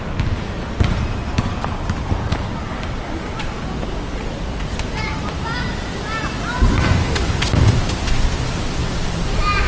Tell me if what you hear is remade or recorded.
recorded